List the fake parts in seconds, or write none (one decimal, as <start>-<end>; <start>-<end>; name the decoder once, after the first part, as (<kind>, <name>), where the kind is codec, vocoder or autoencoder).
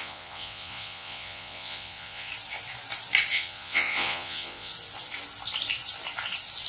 0.0-2.3 (vocoder, Vocos); 3.3-4.7